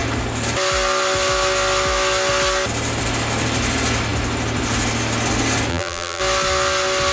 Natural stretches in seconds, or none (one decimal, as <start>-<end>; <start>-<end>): 0.0-5.7; 6.2-7.1